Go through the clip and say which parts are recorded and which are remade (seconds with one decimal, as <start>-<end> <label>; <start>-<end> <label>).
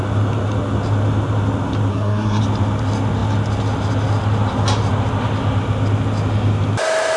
0.0-1.9 recorded; 1.9-2.4 remade; 2.4-7.2 recorded